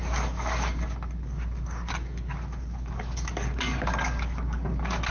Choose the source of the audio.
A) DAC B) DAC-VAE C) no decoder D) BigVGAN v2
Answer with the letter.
A